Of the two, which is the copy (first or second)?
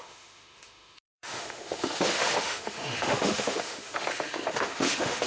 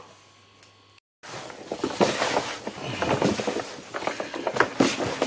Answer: first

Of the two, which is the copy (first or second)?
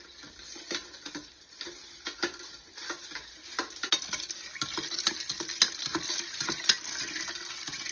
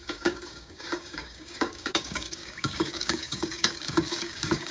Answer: second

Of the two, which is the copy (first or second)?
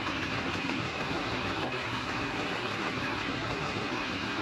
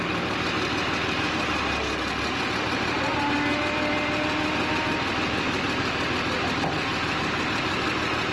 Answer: first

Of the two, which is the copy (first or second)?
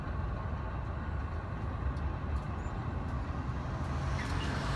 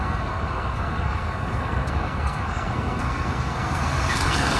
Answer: second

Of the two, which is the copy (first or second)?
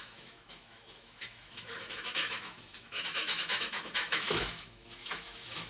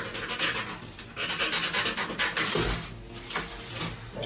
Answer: first